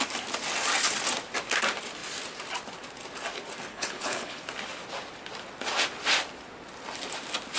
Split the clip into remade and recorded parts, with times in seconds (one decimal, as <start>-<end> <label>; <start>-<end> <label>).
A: 0.0-3.7 recorded; 3.7-4.4 remade; 4.4-7.6 recorded

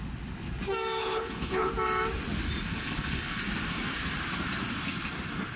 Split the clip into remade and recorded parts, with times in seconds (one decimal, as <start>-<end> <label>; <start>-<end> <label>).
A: 0.0-1.0 recorded; 1.0-1.7 remade; 1.7-2.7 recorded; 2.7-3.4 remade; 3.4-5.6 recorded